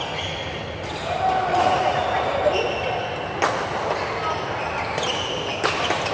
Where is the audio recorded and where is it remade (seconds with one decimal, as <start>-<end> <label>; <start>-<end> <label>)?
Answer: 0.0-1.5 recorded; 1.5-2.4 remade; 2.4-6.1 recorded